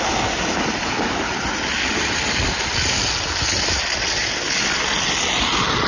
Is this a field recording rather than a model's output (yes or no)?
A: yes